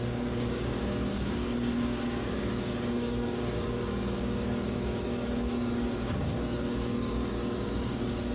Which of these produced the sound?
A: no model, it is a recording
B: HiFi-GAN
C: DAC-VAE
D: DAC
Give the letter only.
D